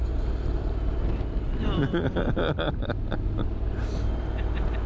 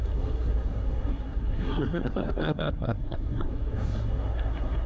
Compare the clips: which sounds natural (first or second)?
first